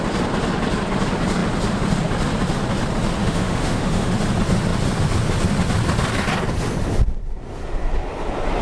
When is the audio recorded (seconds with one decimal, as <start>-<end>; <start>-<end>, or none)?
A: 0.0-3.2; 4.1-8.6